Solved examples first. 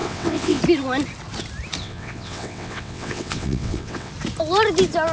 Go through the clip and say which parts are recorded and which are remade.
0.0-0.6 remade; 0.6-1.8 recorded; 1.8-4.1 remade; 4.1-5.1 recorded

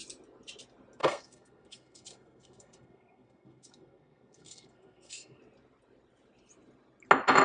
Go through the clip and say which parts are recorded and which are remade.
0.0-1.0 recorded; 1.0-5.4 remade; 5.4-7.4 recorded

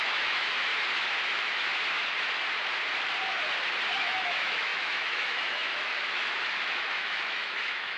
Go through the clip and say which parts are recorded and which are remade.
0.0-0.7 remade; 0.7-1.2 recorded; 1.2-1.7 remade; 1.7-4.0 recorded; 4.0-8.0 remade

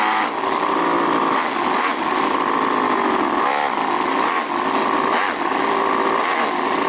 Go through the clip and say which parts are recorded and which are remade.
0.0-6.9 recorded